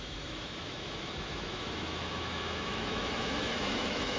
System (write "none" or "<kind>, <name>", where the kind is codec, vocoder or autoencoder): autoencoder, DAC-VAE